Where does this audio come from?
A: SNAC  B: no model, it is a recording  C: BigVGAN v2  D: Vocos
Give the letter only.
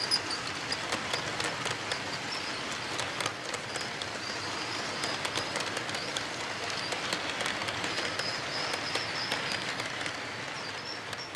B